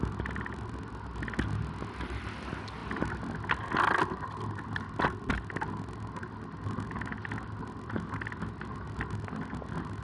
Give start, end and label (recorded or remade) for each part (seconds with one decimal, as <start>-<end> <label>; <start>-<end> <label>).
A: 0.0-10.0 recorded